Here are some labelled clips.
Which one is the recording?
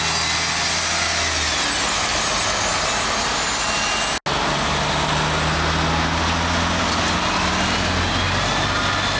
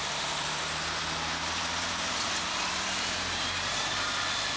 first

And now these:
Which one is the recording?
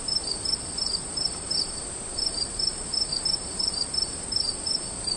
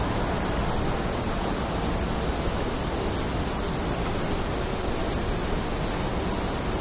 second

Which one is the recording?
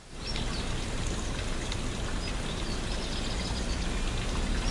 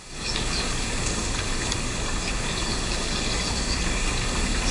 first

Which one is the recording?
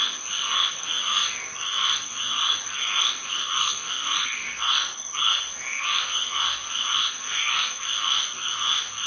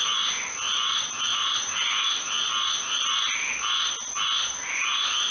second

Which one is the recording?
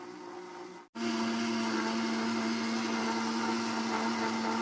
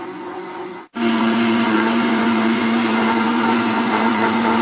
first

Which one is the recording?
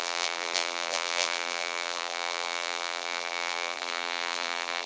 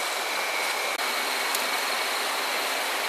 second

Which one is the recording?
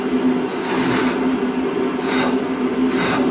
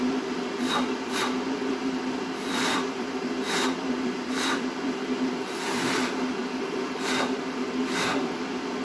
first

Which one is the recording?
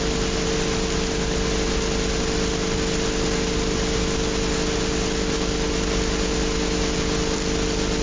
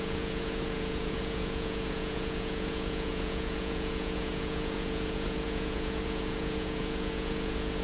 first